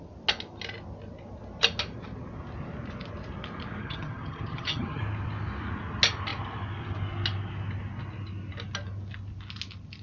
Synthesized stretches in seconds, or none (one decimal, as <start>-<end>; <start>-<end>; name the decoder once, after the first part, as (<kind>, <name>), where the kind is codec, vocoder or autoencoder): 3.8-5.0 (vocoder, HiFi-GAN)